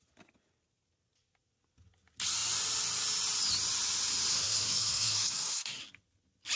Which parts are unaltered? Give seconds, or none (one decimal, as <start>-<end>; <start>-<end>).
0.0-4.3; 5.8-6.6